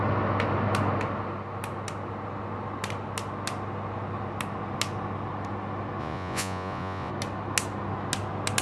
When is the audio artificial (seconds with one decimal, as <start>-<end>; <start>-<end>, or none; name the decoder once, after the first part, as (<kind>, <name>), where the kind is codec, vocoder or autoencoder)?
6.0-7.1 (vocoder, Vocos)